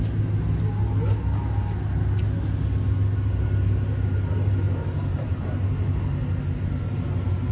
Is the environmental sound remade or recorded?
recorded